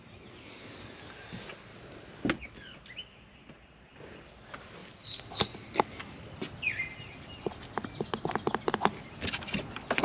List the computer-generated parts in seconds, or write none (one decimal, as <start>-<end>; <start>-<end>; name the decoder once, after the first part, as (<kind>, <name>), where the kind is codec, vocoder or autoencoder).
none